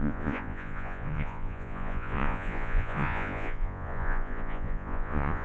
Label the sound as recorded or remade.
remade